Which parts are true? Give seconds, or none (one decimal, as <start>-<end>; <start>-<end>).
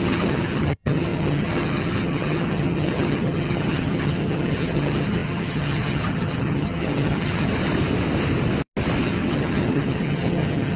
7.5-9.0